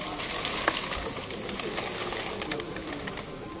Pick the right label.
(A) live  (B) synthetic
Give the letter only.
A